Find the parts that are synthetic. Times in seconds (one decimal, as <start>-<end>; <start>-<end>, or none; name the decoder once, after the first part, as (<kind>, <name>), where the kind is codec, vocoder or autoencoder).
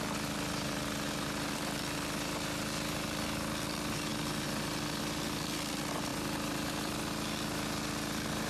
none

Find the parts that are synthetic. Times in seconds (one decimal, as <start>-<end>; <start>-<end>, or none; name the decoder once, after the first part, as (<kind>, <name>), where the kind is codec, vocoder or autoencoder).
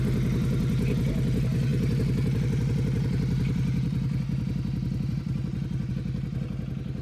none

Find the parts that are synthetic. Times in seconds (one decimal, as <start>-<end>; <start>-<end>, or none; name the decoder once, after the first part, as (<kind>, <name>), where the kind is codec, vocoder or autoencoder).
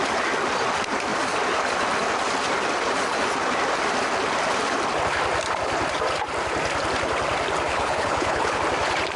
7.7-8.6 (codec, HILCodec)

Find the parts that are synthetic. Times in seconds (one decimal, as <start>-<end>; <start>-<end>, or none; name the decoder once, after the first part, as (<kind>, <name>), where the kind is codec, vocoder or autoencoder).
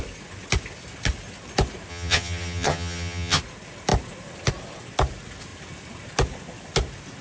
1.9-3.4 (vocoder, HiFi-GAN)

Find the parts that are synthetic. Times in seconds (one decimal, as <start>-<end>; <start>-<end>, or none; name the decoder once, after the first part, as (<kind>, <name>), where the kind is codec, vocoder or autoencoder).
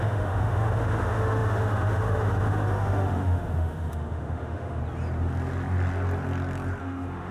0.0-4.8 (autoencoder, DAC-VAE); 6.8-7.3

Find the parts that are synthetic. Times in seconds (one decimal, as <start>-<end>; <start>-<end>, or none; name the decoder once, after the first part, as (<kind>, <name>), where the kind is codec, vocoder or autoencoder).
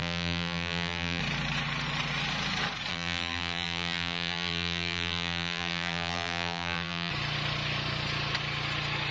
0.0-1.2 (vocoder, BigVGAN v2); 2.9-7.1